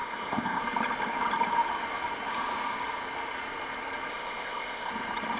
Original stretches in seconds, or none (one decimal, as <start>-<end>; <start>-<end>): 0.6-4.1; 4.9-5.4